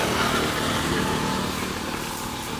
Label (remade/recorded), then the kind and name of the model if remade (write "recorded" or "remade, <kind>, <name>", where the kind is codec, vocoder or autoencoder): recorded